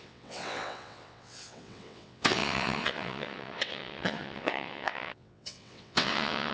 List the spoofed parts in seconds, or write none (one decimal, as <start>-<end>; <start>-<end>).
0.0-6.5